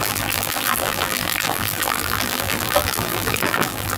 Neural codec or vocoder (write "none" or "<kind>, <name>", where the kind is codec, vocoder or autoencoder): vocoder, BigVGAN v2